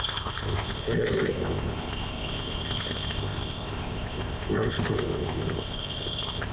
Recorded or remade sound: remade